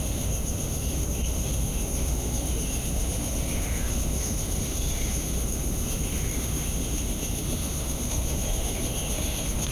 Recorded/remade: remade